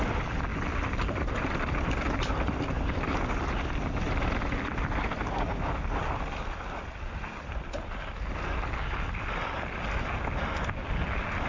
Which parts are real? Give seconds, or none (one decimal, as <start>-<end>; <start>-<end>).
0.0-11.5